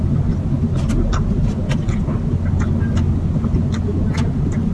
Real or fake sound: real